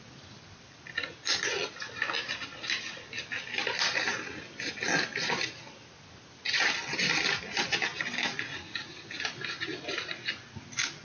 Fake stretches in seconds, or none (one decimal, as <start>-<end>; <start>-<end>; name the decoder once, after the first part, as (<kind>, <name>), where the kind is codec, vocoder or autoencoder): none